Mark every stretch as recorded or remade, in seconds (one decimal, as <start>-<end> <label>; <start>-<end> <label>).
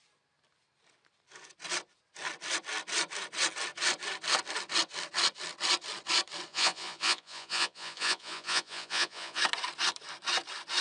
0.0-6.5 recorded; 6.5-9.4 remade; 9.4-10.8 recorded